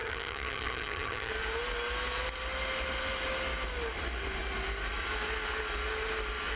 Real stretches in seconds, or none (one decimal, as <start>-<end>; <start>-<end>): 1.3-6.6